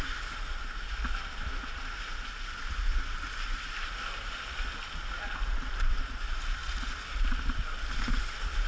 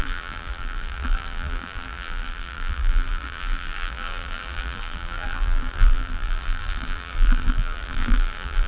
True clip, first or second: first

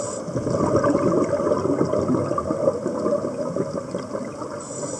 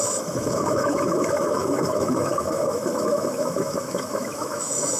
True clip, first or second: first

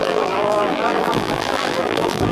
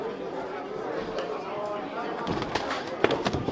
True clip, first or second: second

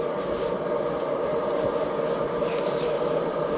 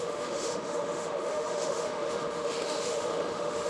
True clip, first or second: first